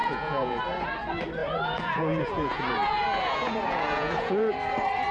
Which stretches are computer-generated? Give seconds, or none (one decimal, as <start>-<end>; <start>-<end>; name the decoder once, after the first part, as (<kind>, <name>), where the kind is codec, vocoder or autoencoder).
0.0-0.6 (vocoder, Vocos); 1.4-4.5